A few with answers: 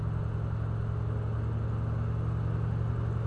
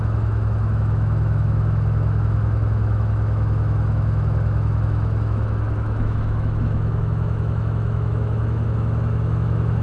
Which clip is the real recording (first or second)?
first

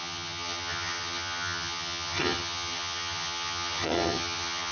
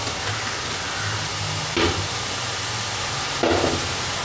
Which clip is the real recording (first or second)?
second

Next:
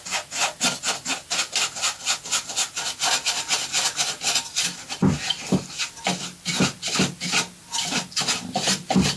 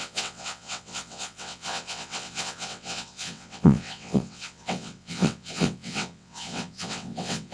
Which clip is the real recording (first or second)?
first